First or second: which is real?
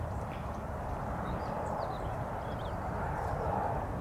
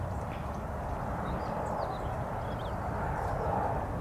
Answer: second